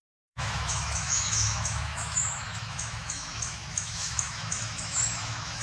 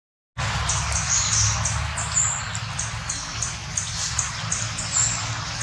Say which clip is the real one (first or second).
second